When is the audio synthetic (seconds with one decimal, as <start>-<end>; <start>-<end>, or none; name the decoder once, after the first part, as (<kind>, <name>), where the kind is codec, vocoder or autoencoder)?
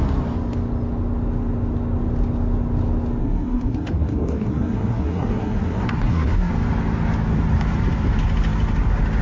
3.2-6.5 (codec, SNAC)